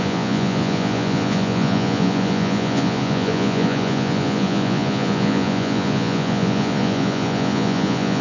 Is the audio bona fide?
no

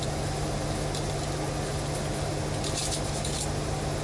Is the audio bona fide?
yes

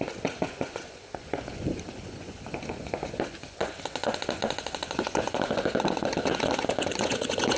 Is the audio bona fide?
no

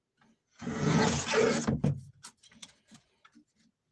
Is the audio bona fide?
no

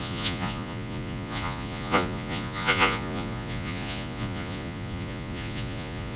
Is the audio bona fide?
no